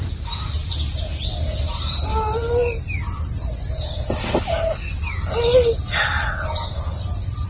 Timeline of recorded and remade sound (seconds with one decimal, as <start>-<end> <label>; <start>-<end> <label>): 0.0-7.5 recorded

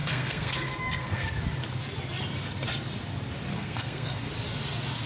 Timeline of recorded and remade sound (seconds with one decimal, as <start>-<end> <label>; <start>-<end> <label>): 0.0-1.3 remade; 1.3-3.5 recorded; 3.5-4.3 remade; 4.3-5.1 recorded

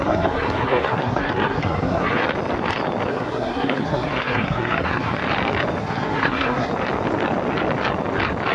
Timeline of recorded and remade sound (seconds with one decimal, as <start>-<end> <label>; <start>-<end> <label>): 0.0-2.2 remade; 2.2-3.1 recorded; 3.1-5.2 remade; 5.2-5.8 recorded; 5.8-6.7 remade; 6.7-8.5 recorded

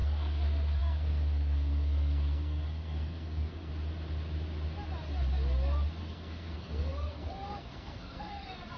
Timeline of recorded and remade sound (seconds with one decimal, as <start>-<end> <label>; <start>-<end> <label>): 0.0-3.7 remade; 3.7-6.0 recorded; 6.0-8.8 remade

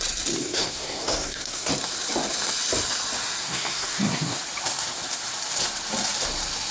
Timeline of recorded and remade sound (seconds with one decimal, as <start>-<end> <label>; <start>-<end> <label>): 0.0-0.4 recorded; 0.4-1.7 remade; 1.7-3.4 recorded; 3.4-4.4 remade; 4.4-6.7 recorded

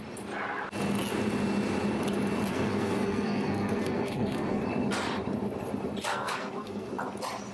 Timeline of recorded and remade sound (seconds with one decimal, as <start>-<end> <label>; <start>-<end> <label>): 0.0-2.5 recorded; 2.5-4.6 remade; 4.6-6.1 recorded; 6.1-6.9 remade; 6.9-7.5 recorded

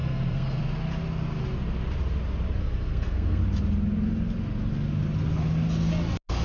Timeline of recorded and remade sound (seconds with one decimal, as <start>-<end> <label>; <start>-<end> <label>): 0.0-0.6 remade; 0.6-2.6 recorded; 2.6-3.4 remade; 3.4-6.4 recorded